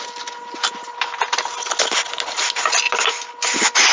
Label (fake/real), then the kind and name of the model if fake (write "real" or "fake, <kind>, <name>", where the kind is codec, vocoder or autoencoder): real